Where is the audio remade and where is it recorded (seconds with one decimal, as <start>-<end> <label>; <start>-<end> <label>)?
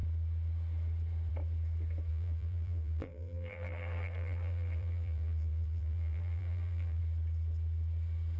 0.0-2.1 recorded; 2.1-7.0 remade; 7.0-8.4 recorded